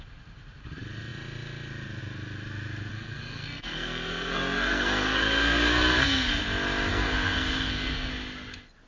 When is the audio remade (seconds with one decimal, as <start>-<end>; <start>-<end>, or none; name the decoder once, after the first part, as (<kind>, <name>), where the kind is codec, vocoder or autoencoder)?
2.9-6.4 (codec, SNAC); 6.9-8.1